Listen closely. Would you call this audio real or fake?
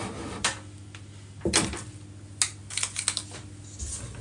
real